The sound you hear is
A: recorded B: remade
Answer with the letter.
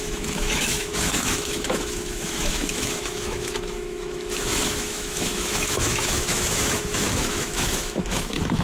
B